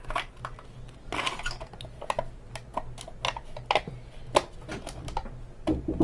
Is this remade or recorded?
recorded